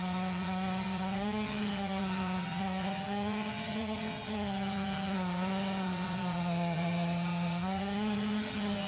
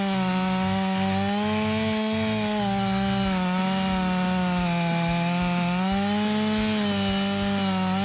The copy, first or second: first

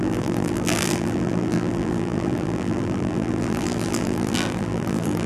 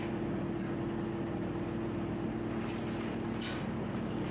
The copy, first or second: first